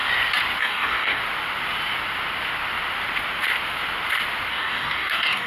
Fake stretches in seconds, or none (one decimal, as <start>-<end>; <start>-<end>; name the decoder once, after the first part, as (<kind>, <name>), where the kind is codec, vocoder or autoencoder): 0.6-1.2 (codec, DAC); 4.5-5.5